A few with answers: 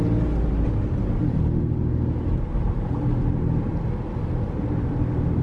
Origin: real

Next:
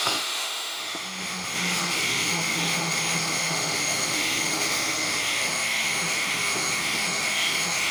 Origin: fake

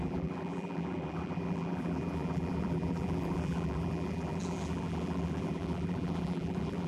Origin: fake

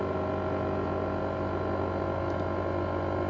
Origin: real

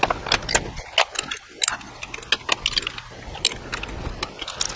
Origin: real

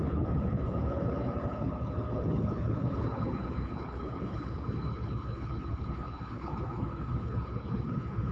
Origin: fake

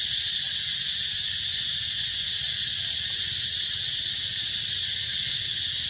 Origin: real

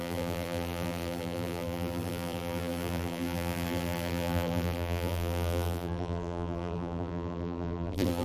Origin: fake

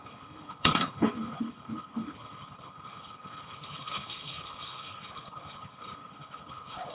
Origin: fake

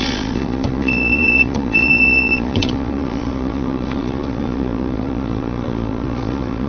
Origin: fake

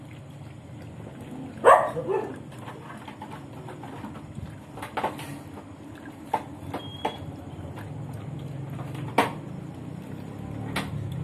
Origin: real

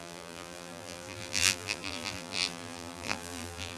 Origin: fake